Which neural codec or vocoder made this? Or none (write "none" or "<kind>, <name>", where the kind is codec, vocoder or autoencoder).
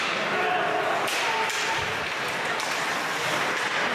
vocoder, BigVGAN v2